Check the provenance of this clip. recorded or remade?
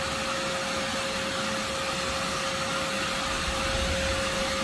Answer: recorded